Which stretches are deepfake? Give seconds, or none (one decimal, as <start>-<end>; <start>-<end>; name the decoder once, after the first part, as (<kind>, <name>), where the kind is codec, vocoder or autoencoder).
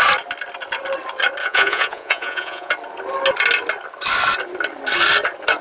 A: 1.4-2.7 (vocoder, Vocos)